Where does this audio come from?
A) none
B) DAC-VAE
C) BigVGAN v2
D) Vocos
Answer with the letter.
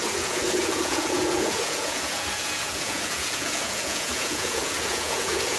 D